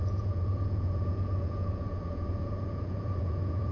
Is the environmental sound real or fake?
fake